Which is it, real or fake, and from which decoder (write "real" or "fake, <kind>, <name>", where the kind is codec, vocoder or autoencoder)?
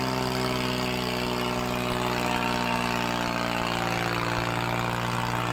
real